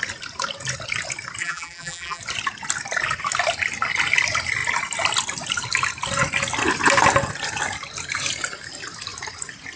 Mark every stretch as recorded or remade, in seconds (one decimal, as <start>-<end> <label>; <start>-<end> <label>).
0.0-1.4 recorded; 1.4-2.2 remade; 2.2-9.8 recorded